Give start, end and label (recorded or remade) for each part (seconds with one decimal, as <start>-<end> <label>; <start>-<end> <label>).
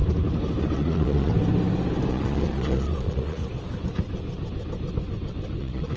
0.0-0.6 recorded; 0.6-1.3 remade; 1.3-2.1 recorded; 2.1-3.4 remade; 3.4-5.6 recorded; 5.6-6.0 remade